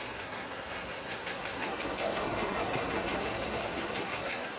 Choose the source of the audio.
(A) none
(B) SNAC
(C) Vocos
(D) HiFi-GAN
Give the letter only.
B